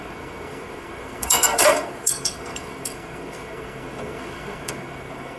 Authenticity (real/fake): fake